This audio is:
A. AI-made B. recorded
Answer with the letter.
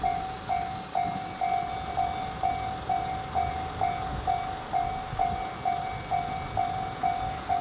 B